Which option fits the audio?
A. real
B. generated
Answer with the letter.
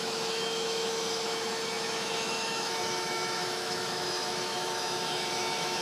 B